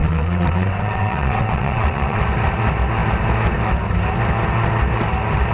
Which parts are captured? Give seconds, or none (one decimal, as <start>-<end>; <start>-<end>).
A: 2.2-5.5